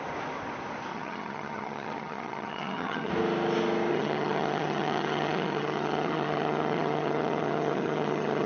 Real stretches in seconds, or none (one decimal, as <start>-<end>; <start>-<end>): 0.0-0.9; 3.1-3.9